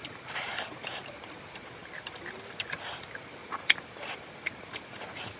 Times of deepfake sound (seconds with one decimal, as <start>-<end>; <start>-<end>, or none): none